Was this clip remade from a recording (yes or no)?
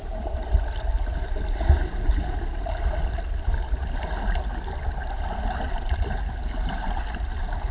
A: no